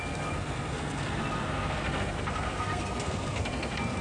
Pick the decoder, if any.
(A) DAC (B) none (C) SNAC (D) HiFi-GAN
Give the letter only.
C